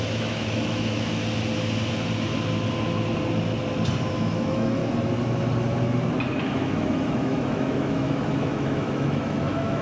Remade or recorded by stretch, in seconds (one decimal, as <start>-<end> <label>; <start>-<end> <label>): 0.0-1.2 remade; 1.2-4.1 recorded; 4.1-4.8 remade; 4.8-6.4 recorded; 6.4-9.8 remade